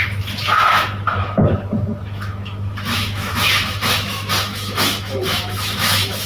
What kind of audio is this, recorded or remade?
remade